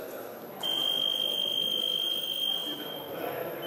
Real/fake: real